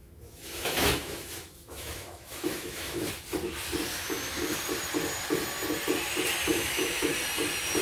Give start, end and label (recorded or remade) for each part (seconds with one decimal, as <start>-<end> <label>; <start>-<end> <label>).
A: 0.0-3.1 remade; 3.1-3.9 recorded; 3.9-4.6 remade; 4.6-6.5 recorded; 6.5-7.1 remade; 7.1-7.8 recorded